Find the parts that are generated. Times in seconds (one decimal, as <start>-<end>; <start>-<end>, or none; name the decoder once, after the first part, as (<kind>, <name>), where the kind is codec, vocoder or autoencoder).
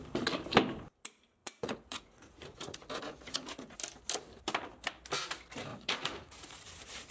1.4-3.8 (vocoder, Vocos); 5.7-6.6